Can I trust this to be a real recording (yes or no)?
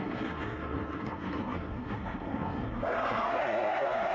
no